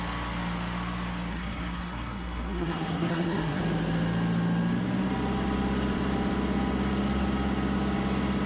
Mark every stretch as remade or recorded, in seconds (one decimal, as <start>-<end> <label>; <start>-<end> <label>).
0.0-1.3 recorded; 1.3-3.6 remade; 3.6-8.5 recorded